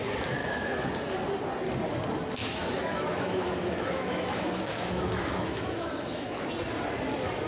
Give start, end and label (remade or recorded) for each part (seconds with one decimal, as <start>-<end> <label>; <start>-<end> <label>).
0.0-0.4 recorded; 0.4-0.9 remade; 0.9-2.4 recorded; 2.4-6.5 remade; 6.5-7.5 recorded